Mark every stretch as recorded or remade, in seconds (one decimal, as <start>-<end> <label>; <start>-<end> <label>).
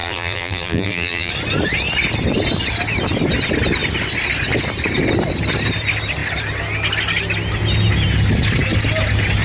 0.0-1.3 remade; 1.3-9.4 recorded